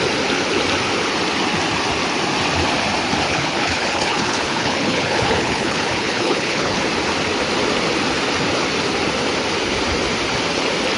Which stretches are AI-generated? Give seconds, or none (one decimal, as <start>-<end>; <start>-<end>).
3.3-6.8